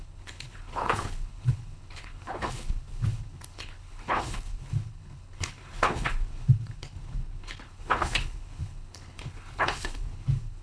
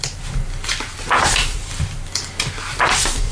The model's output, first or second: first